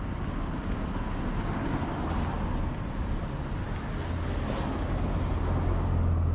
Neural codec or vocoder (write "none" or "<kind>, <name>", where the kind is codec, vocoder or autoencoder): none